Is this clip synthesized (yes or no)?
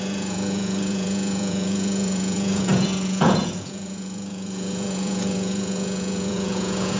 yes